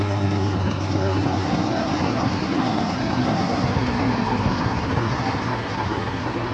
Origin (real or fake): fake